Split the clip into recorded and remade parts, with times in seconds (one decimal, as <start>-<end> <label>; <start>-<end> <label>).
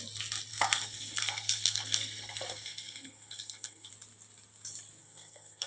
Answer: 0.0-0.5 recorded; 0.5-3.9 remade; 3.9-5.0 recorded; 5.0-5.7 remade